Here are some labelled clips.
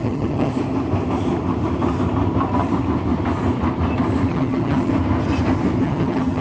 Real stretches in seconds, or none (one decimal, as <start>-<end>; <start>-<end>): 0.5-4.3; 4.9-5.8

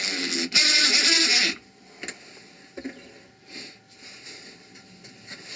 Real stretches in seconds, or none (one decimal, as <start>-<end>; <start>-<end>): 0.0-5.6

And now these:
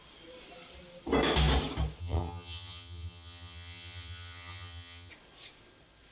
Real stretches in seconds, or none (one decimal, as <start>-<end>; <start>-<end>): 0.0-2.0; 5.1-6.1